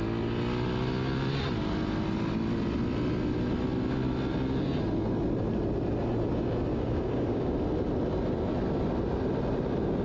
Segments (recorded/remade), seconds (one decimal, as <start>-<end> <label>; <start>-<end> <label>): 0.0-6.7 recorded; 6.7-7.6 remade; 7.6-10.0 recorded